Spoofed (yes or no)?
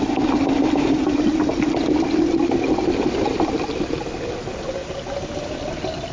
no